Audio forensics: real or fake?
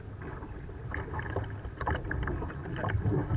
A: real